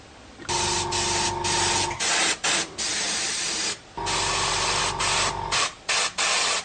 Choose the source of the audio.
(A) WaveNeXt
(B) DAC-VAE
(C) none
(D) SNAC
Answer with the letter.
C